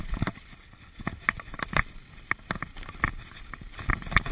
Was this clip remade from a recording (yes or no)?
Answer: no